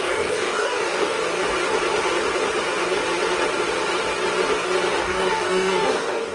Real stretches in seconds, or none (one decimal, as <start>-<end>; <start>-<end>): 1.2-5.0